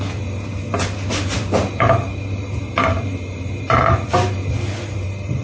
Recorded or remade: remade